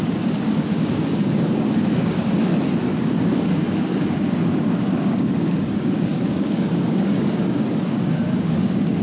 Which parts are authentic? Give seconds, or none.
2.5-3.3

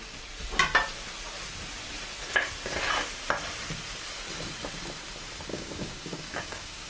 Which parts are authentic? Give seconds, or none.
0.0-5.5

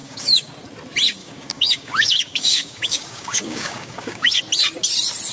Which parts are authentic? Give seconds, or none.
0.5-1.2; 4.4-5.3

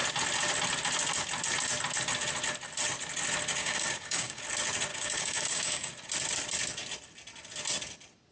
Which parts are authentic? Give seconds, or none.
0.0-3.6; 4.4-4.9; 5.9-8.3

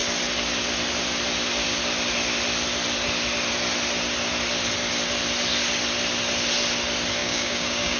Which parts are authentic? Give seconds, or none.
0.0-7.2

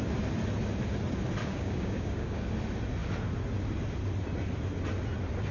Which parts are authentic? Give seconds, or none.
0.0-1.4; 2.5-5.5

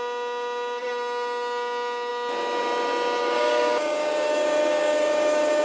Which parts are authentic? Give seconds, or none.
0.0-3.2

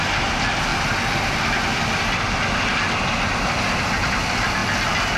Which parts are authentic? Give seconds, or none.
0.0-5.2